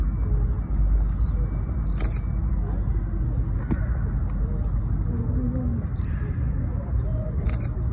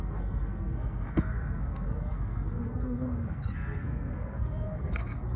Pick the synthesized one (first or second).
second